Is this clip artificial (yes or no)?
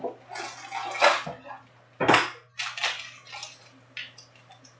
no